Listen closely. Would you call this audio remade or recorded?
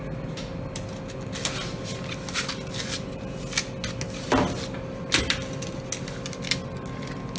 recorded